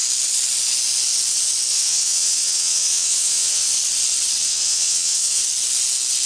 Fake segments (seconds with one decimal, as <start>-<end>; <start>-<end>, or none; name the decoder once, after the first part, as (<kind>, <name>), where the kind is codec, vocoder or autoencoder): 1.7-3.7 (vocoder, WaveNeXt); 4.4-5.4